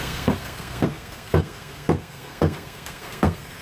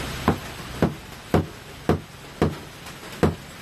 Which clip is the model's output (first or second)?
first